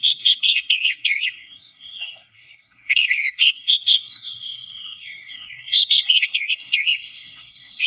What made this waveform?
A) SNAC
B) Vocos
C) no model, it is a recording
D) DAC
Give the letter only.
A